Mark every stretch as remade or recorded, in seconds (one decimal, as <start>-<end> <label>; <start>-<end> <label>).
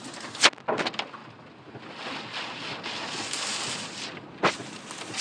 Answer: 0.0-5.2 recorded